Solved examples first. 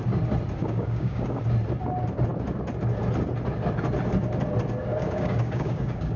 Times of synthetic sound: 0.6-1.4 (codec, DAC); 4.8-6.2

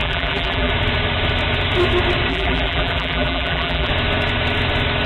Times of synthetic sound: 0.0-0.7 (vocoder, BigVGAN v2); 2.3-3.9

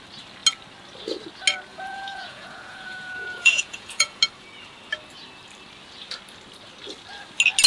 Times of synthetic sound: 1.7-4.2 (vocoder, Vocos)

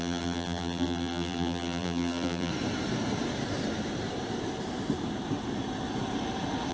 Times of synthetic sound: 0.0-2.5 (vocoder, BigVGAN v2)

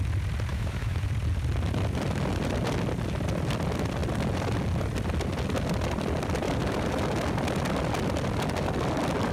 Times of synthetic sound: 0.5-1.1 (autoencoder, DAC-VAE)

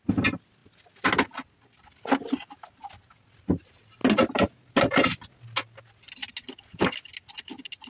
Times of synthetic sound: none